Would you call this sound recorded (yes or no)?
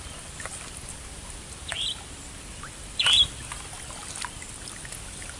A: no